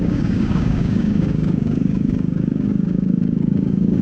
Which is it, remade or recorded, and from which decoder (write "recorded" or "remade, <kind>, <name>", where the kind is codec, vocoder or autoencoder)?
remade, codec, DAC